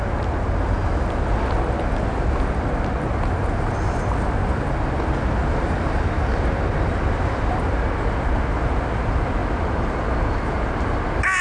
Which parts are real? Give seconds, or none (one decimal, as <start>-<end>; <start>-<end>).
0.0-11.4